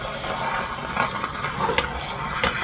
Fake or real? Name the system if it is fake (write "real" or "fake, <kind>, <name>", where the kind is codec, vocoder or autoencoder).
real